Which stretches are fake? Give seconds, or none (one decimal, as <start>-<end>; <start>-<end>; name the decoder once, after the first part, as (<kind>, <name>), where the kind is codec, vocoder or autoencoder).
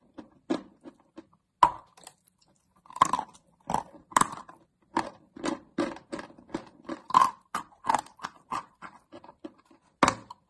none